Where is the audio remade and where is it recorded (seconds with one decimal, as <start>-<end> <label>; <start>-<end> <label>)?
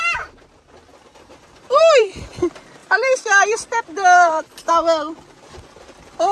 0.0-0.9 recorded; 0.9-2.1 remade; 2.1-2.8 recorded; 2.8-4.7 remade; 4.7-6.3 recorded